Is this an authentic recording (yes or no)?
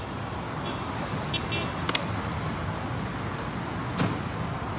yes